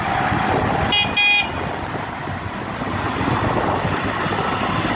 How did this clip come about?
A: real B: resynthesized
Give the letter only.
A